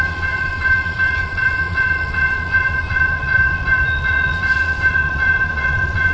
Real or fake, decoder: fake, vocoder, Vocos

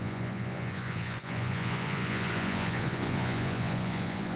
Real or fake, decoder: fake, vocoder, Vocos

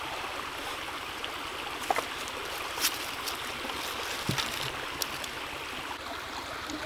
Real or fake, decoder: real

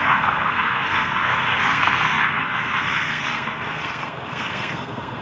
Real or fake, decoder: fake, codec, SNAC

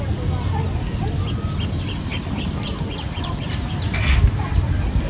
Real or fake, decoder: real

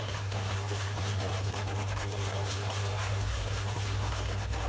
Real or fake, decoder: fake, codec, SNAC